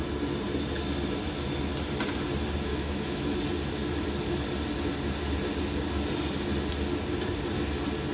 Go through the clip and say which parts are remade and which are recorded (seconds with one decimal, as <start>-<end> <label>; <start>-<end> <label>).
0.0-2.7 recorded; 2.7-3.4 remade; 3.4-8.1 recorded